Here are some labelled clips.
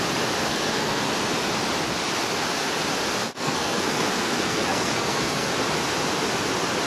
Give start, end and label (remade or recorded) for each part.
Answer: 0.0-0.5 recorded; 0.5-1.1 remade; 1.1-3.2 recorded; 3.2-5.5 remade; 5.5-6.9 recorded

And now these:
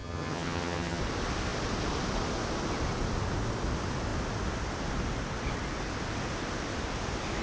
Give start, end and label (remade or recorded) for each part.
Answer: 0.0-1.0 remade; 1.0-7.4 recorded

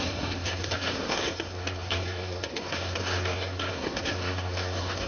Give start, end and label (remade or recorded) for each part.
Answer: 0.0-5.1 remade

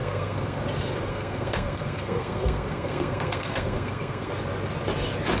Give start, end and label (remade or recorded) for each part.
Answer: 0.0-0.6 remade; 0.6-1.1 recorded; 1.1-4.3 remade; 4.3-5.4 recorded

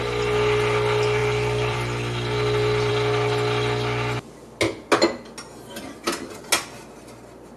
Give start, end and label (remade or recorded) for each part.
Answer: 0.0-1.2 recorded; 1.2-2.9 remade; 2.9-7.6 recorded